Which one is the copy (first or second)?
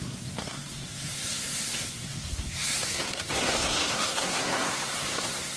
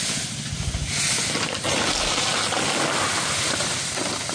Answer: first